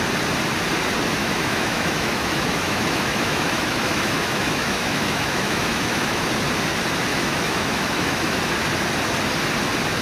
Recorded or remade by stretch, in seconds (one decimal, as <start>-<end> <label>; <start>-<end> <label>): 0.0-1.2 recorded; 1.2-6.2 remade; 6.2-7.1 recorded; 7.1-8.4 remade; 8.4-10.0 recorded